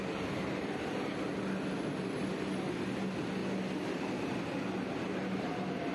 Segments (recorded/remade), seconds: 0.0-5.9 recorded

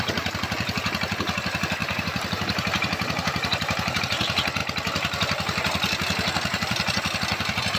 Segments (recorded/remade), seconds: 0.0-1.8 recorded; 1.8-4.0 remade; 4.0-7.8 recorded

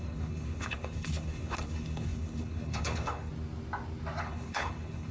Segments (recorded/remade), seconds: 0.0-3.3 remade; 3.3-4.2 recorded; 4.2-5.1 remade

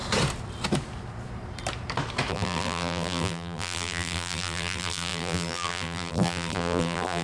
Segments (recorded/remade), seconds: 0.0-2.3 recorded; 2.3-7.2 remade

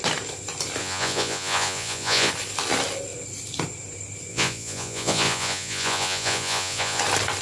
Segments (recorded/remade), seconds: 0.0-0.8 recorded; 0.8-2.3 remade; 2.3-4.3 recorded; 4.3-7.0 remade; 7.0-7.4 recorded

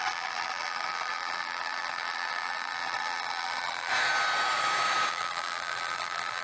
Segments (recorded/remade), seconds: 0.0-3.9 remade; 3.9-5.1 recorded; 5.1-6.4 remade

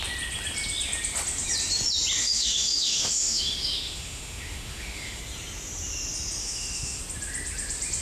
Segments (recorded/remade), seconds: 0.0-2.2 recorded; 2.2-5.2 remade; 5.2-6.4 recorded; 6.4-7.0 remade; 7.0-8.0 recorded